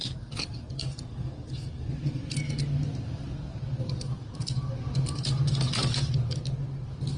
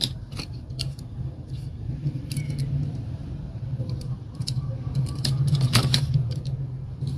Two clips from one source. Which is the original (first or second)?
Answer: first